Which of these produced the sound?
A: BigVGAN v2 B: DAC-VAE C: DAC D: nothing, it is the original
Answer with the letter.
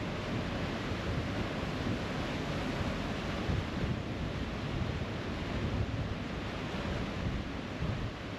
D